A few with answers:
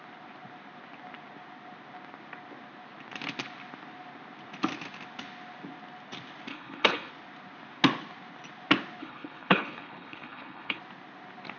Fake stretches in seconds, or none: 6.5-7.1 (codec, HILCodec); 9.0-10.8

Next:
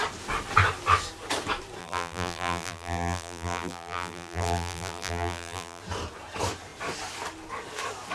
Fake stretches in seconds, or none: 1.8-5.8 (vocoder, BigVGAN v2)

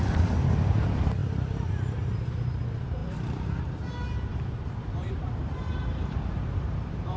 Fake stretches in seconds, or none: 0.0-7.2 (vocoder, BigVGAN v2)

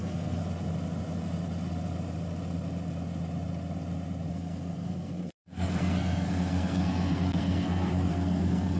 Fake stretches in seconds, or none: 0.0-0.4 (codec, SNAC); 4.3-8.8

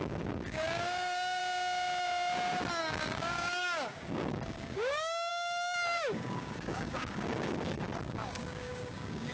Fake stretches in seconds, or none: 0.0-1.4 (codec, DAC); 2.8-9.3

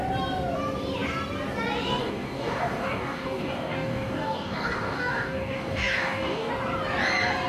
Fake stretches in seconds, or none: 2.0-6.5 (codec, DAC)

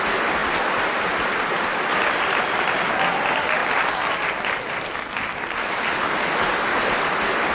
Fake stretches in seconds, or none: none